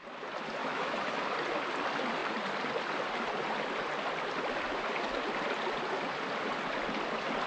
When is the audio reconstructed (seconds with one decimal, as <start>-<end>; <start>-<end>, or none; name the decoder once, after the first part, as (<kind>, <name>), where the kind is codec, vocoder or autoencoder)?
0.6-1.2 (autoencoder, DAC-VAE)